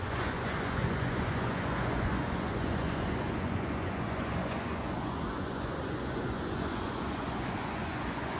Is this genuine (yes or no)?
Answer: no